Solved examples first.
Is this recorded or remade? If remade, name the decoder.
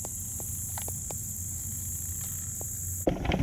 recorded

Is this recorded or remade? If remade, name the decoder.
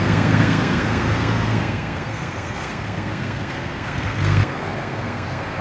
remade, codec, SNAC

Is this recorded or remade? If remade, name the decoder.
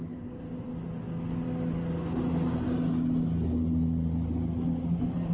recorded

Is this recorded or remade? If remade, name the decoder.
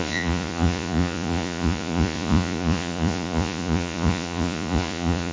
remade, vocoder, Vocos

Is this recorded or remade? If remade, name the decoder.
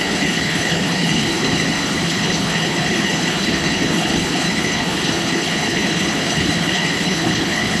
remade, codec, HILCodec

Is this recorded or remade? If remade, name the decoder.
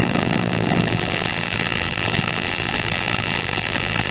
remade, vocoder, BigVGAN v2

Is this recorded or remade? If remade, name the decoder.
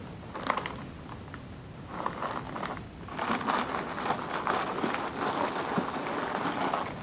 recorded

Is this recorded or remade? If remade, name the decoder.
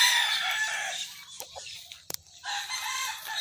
remade, vocoder, BigVGAN v2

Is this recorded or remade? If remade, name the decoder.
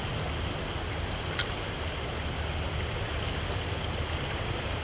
recorded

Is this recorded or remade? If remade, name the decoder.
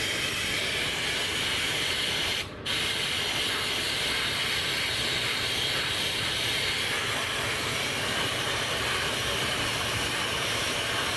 remade, vocoder, BigVGAN v2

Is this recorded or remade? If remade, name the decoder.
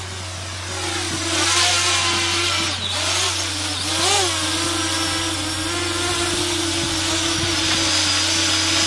recorded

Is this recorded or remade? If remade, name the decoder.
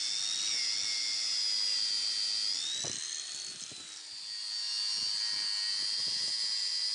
recorded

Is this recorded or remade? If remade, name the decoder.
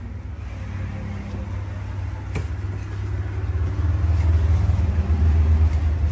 recorded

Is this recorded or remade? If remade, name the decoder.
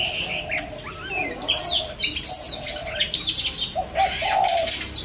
recorded